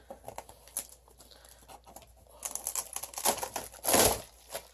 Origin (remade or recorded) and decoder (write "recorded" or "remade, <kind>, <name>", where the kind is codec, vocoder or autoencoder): recorded